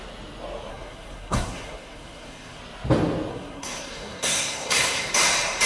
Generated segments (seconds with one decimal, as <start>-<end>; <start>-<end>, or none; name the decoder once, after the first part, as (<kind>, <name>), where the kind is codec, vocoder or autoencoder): 0.7-2.6 (codec, SNAC); 3.3-5.1

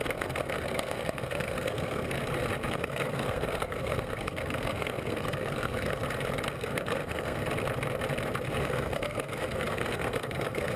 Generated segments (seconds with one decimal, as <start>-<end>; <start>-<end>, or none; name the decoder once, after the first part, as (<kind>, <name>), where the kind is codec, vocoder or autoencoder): 0.0-2.2 (codec, SNAC); 2.7-6.0; 6.5-7.4; 8.6-10.8

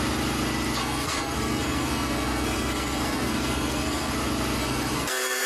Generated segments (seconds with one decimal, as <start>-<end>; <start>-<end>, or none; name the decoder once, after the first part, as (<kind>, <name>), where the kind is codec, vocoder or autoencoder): 0.8-4.1 (codec, SNAC); 4.6-5.5

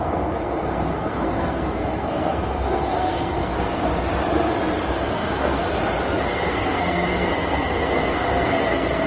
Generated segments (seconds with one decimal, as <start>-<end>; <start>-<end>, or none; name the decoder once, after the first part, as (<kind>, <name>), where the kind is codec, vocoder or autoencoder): 0.0-3.9 (codec, SNAC); 5.0-5.6; 6.2-9.1

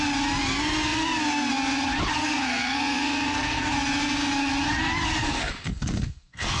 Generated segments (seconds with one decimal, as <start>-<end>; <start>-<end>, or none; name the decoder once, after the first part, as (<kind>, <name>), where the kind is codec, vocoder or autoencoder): 2.2-3.7 (codec, SNAC); 5.2-6.6

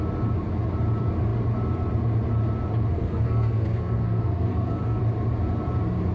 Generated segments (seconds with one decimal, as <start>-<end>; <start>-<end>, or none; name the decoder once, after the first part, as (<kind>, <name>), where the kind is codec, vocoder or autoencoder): 2.9-5.0 (codec, SNAC)